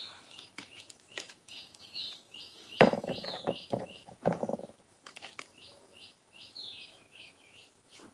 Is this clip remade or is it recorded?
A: remade